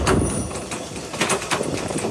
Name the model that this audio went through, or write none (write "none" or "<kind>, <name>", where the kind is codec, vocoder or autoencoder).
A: none